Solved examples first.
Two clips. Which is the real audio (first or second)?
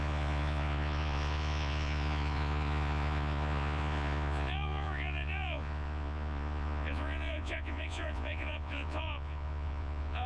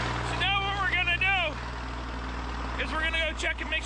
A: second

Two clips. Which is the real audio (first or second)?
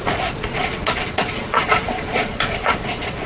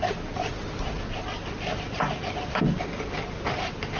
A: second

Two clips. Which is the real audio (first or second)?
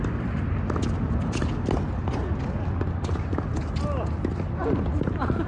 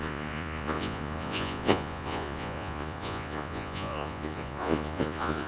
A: first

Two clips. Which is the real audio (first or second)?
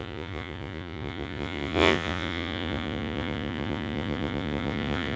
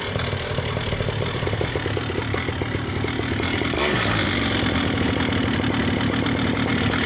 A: second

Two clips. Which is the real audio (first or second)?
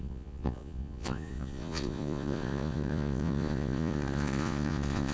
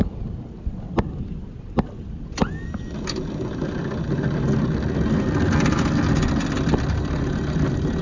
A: second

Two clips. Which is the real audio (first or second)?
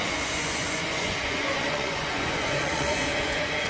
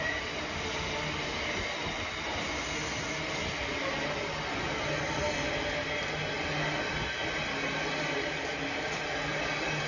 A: second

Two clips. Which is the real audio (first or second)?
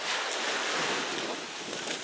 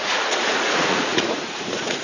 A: first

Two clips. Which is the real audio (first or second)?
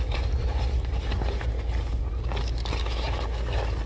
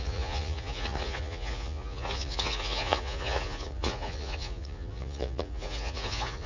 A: first